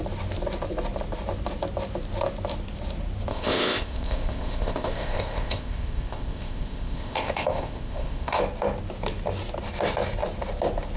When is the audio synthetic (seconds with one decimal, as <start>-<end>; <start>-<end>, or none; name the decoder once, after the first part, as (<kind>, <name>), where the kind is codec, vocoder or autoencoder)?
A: 3.3-8.4 (codec, ZipCodec)